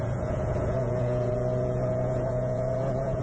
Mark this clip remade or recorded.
remade